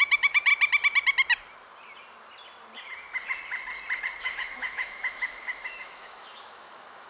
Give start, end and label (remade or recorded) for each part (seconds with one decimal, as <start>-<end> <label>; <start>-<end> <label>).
0.0-0.5 remade; 0.5-4.2 recorded; 4.2-7.1 remade